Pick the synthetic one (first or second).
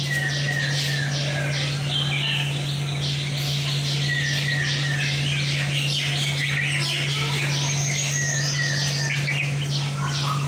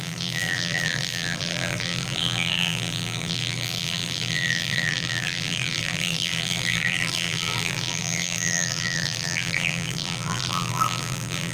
second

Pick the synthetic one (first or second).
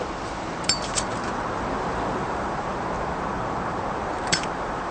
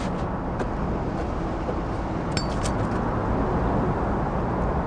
first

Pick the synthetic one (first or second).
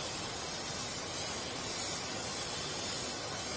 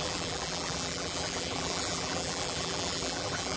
second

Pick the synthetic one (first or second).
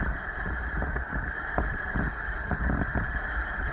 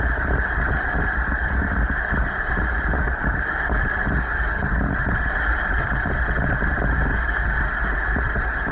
first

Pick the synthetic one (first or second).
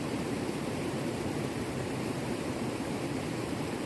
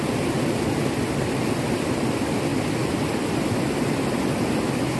first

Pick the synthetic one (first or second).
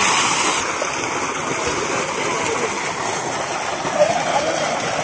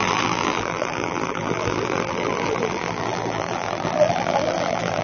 second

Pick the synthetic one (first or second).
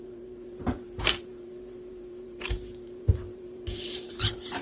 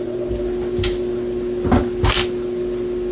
first